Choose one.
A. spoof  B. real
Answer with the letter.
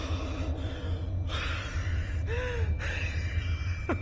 B